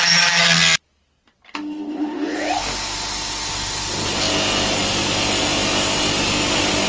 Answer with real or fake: real